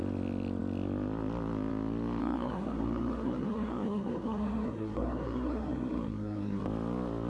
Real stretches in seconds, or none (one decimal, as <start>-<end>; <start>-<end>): 0.0-2.2; 6.6-7.3